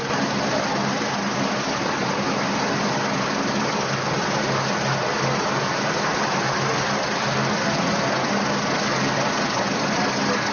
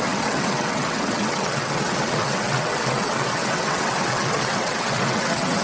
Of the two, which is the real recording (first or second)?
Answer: first